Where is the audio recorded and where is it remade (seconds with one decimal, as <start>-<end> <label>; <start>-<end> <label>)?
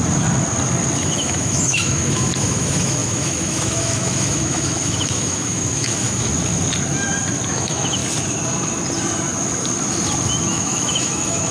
0.0-1.0 recorded; 1.0-6.3 remade; 6.3-7.5 recorded; 7.5-8.0 remade; 8.0-10.4 recorded; 10.4-11.5 remade